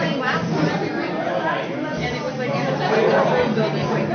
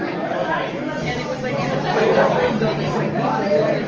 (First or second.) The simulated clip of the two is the second